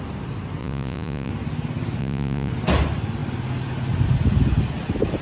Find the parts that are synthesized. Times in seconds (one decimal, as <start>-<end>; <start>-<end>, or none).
0.6-1.3; 2.0-2.5